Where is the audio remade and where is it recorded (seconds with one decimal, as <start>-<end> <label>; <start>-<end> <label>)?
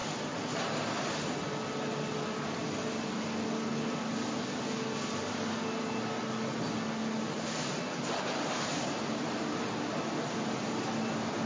0.0-11.5 recorded